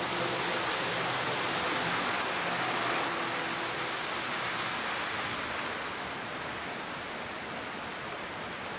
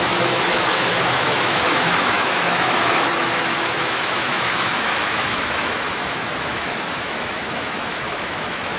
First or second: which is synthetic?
second